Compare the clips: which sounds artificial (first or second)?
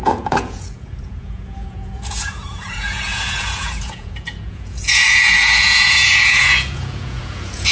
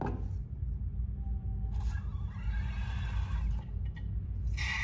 first